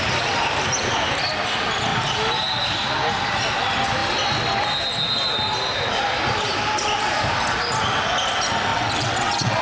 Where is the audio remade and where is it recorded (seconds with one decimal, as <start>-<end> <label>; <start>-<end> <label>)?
0.0-8.7 recorded; 8.7-9.6 remade